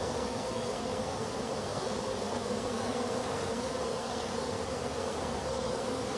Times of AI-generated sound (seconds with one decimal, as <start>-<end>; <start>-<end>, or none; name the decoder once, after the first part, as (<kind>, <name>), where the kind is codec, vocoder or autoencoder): 0.0-6.2 (codec, SNAC)